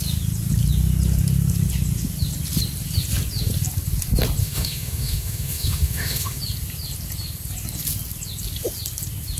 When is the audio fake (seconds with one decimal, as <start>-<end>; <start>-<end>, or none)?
4.4-6.4